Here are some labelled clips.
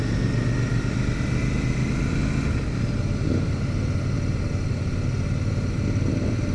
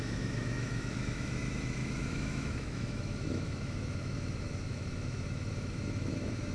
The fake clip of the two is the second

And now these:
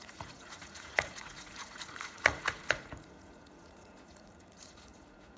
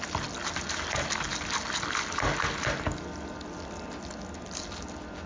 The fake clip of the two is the first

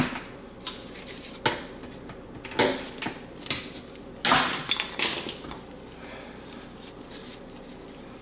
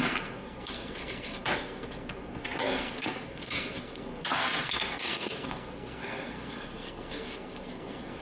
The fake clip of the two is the second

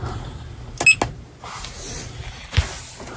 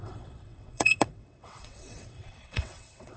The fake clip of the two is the second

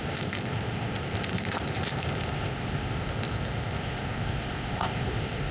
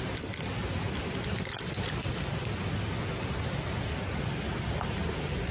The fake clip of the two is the first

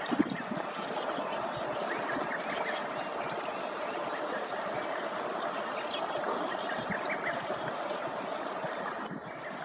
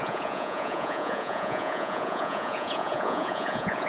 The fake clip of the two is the second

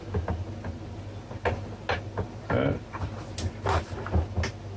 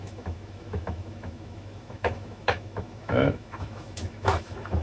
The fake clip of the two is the second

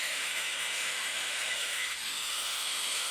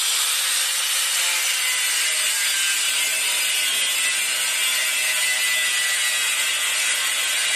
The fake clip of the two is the first